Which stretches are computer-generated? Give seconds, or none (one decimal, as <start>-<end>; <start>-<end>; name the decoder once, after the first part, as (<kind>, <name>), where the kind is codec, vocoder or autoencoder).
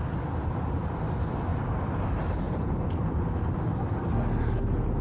none